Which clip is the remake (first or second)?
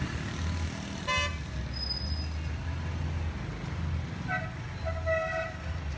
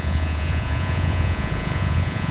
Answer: second